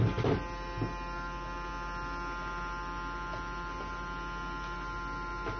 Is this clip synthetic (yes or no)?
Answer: no